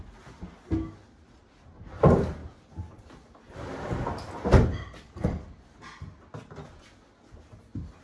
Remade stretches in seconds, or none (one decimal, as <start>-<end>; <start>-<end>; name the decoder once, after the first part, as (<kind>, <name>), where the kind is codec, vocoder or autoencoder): none